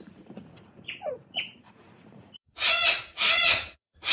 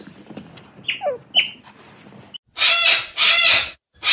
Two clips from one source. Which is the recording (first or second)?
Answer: second